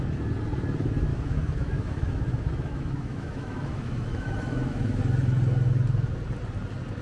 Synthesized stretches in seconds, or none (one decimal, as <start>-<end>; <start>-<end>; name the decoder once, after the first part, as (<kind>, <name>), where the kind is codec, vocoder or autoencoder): 1.1-5.0 (autoencoder, DAC-VAE)